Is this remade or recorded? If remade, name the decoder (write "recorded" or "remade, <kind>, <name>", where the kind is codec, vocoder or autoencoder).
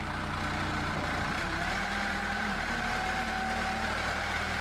remade, vocoder, BigVGAN v2